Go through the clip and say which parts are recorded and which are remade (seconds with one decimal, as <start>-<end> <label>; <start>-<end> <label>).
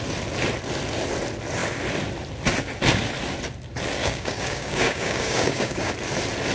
0.0-4.0 recorded; 4.0-5.9 remade; 5.9-6.5 recorded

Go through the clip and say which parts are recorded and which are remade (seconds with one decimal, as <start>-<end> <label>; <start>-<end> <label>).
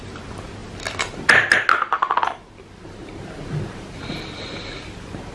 0.0-5.3 recorded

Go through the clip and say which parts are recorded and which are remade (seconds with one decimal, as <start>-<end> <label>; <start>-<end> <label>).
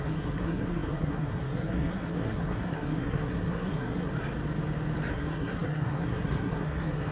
0.0-4.1 remade; 4.1-5.1 recorded; 5.1-7.1 remade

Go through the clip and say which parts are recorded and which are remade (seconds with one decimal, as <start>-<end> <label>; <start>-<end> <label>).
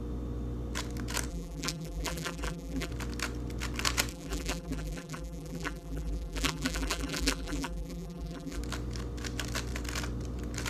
0.0-1.3 recorded; 1.3-2.9 remade; 2.9-4.1 recorded; 4.1-8.6 remade; 8.6-10.7 recorded